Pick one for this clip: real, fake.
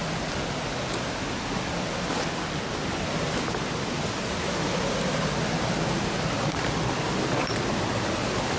real